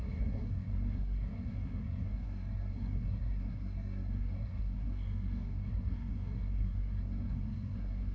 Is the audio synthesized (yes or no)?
yes